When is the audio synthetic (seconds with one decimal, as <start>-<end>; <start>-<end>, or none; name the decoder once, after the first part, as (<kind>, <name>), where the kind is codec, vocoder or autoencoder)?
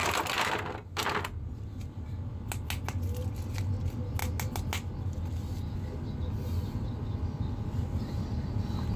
none